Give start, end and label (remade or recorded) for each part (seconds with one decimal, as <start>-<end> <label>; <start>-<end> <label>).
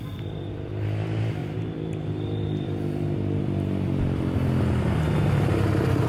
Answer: 0.0-1.4 recorded; 1.4-3.4 remade; 3.4-6.1 recorded